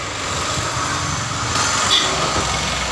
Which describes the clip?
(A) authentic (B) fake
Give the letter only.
A